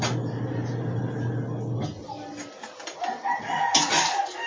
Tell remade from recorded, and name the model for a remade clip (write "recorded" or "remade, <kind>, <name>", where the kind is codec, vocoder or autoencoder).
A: recorded